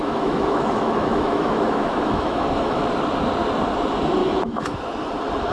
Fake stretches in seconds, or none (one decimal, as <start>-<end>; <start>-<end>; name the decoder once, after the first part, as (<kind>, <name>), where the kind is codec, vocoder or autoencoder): 0.0-2.8 (autoencoder, DAC-VAE); 4.2-4.8